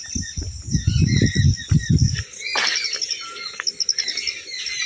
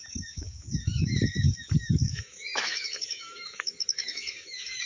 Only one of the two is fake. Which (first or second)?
second